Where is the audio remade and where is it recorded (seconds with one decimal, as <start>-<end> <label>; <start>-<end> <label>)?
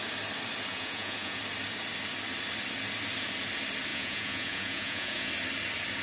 0.0-0.7 recorded; 0.7-1.4 remade; 1.4-3.9 recorded; 3.9-5.3 remade; 5.3-6.0 recorded